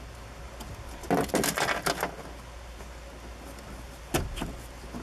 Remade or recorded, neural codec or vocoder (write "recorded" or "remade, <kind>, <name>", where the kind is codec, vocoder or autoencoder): recorded